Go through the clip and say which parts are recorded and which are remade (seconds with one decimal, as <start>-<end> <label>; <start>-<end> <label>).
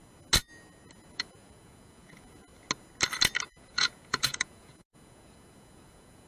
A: 0.0-1.1 recorded; 1.1-2.5 remade; 2.5-3.4 recorded; 3.4-6.3 remade